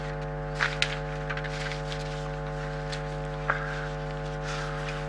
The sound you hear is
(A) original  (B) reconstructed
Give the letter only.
A